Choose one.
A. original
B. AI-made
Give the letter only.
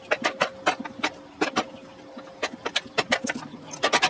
A